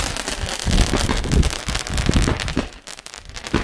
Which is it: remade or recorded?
recorded